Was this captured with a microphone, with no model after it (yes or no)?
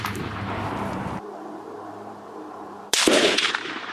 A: no